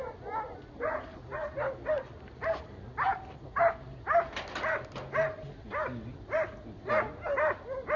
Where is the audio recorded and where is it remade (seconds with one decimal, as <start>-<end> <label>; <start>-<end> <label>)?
0.0-8.0 recorded